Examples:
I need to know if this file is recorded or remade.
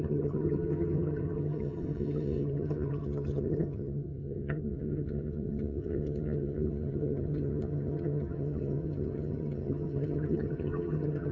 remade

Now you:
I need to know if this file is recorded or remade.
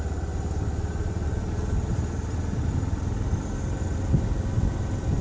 recorded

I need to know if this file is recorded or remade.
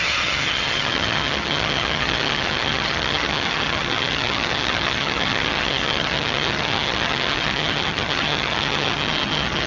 remade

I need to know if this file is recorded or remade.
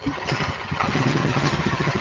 remade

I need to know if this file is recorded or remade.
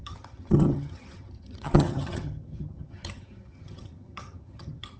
remade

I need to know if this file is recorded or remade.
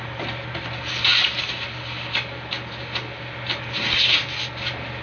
recorded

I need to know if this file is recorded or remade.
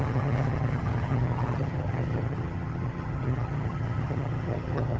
remade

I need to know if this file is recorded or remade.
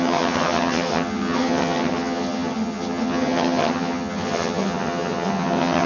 remade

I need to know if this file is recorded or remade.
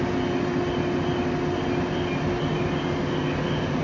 recorded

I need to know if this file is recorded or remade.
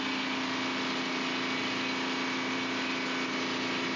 recorded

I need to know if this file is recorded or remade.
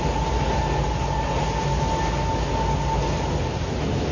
recorded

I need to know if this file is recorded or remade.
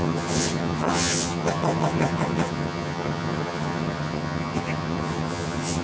remade